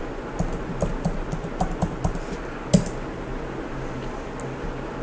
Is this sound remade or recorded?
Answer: recorded